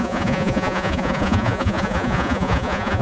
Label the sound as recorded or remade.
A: remade